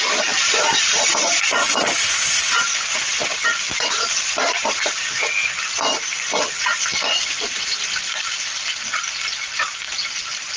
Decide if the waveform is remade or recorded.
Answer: recorded